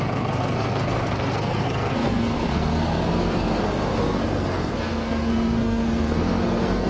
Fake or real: fake